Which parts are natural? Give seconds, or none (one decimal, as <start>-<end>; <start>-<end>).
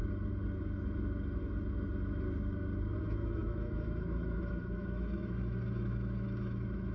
0.0-3.0